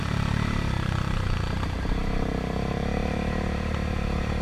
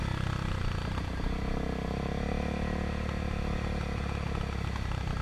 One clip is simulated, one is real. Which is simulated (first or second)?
first